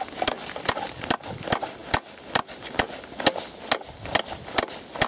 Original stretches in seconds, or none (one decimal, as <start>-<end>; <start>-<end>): 0.0-5.1